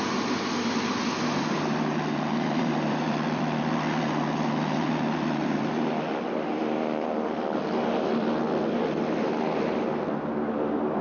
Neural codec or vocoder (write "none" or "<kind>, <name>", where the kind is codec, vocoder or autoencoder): vocoder, BigVGAN v2